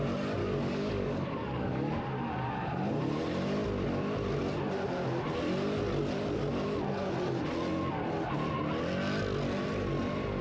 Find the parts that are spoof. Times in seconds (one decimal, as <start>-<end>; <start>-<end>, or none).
0.4-2.0